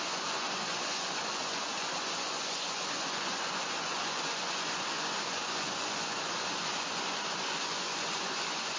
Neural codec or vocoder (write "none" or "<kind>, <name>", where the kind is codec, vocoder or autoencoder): vocoder, Vocos